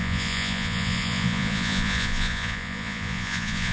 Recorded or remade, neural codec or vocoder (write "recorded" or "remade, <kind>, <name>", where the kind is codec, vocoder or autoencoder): remade, vocoder, Vocos